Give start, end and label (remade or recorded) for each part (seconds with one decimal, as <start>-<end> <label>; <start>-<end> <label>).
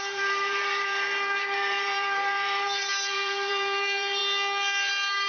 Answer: 0.0-4.2 remade; 4.2-5.3 recorded